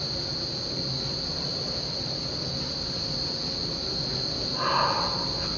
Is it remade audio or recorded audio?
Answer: recorded